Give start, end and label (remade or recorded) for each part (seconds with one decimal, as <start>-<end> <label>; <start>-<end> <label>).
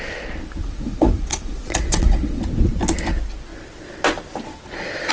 0.0-0.6 recorded; 0.6-2.4 remade; 2.4-5.1 recorded